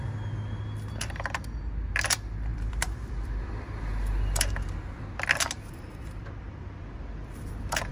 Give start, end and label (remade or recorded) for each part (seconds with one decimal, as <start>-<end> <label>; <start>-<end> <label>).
0.0-2.5 recorded; 2.5-4.5 remade; 4.5-6.2 recorded; 6.2-7.9 remade